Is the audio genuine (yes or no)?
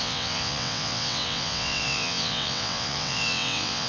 no